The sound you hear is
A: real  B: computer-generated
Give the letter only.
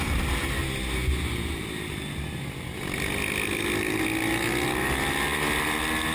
A